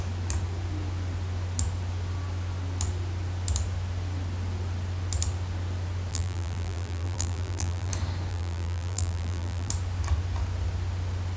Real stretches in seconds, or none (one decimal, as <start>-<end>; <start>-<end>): 0.0-6.1; 7.9-8.3; 9.7-11.4